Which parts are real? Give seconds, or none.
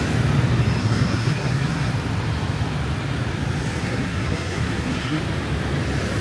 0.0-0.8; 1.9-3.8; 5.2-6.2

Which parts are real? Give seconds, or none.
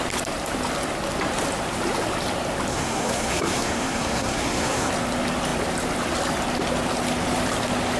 0.0-2.7; 4.9-8.0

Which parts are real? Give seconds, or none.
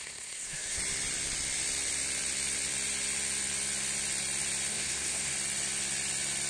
0.8-4.7; 5.3-6.5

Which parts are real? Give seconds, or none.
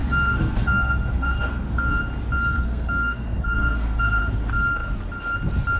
2.0-2.6; 4.2-5.8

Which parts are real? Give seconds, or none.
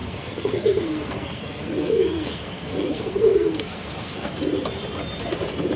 4.3-5.8